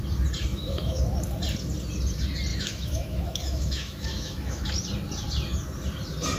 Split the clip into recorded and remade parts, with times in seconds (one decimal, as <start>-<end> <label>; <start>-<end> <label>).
0.0-0.5 recorded; 0.5-1.0 remade; 1.0-2.5 recorded; 2.5-4.7 remade; 4.7-6.4 recorded